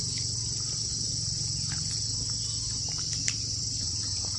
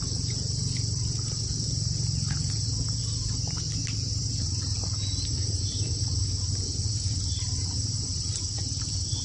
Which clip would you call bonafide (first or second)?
first